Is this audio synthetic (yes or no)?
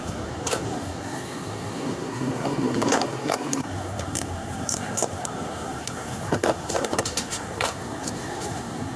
yes